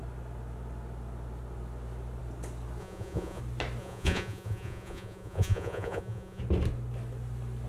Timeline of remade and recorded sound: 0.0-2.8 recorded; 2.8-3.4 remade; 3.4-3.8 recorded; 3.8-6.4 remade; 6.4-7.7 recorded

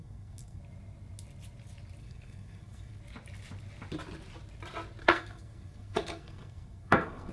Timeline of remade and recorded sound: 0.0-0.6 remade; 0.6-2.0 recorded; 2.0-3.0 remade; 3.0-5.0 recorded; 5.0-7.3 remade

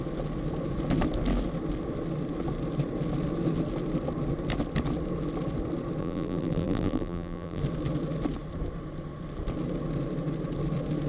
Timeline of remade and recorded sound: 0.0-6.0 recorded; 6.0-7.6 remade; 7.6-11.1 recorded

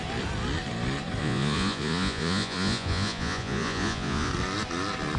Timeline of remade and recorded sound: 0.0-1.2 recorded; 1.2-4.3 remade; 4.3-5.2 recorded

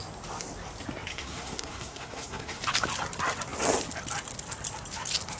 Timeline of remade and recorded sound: 0.0-1.1 recorded; 1.1-2.6 remade; 2.6-5.4 recorded

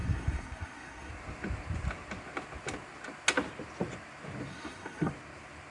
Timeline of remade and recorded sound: 0.0-1.1 remade; 1.1-4.5 recorded; 4.5-5.1 remade; 5.1-5.7 recorded

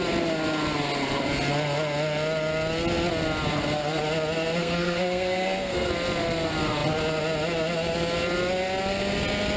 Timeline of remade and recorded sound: 0.0-4.6 recorded; 4.6-5.9 remade; 5.9-9.6 recorded

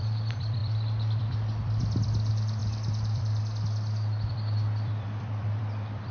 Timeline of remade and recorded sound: 0.0-6.1 remade